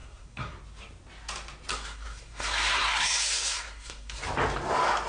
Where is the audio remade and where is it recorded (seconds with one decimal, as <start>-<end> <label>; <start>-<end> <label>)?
0.0-0.6 remade; 0.6-1.7 recorded; 1.7-4.2 remade; 4.2-5.1 recorded